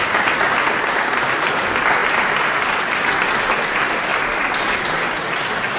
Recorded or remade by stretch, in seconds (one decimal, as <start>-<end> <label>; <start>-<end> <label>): 0.0-5.8 recorded